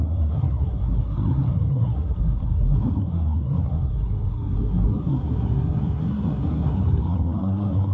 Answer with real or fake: fake